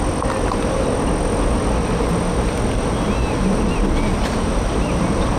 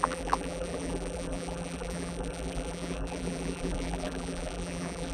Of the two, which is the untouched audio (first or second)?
first